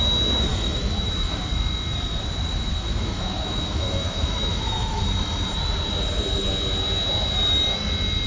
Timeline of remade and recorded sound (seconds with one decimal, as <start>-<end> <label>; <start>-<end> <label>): 0.0-0.5 recorded; 0.5-1.5 remade; 1.5-2.5 recorded; 2.5-5.0 remade; 5.0-8.3 recorded